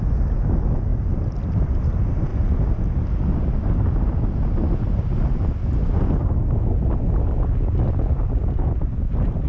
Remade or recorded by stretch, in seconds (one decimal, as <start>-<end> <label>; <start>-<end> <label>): 0.0-9.5 recorded